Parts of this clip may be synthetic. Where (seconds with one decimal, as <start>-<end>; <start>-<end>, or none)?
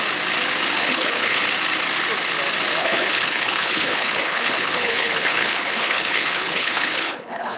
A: 0.8-1.4; 2.8-7.6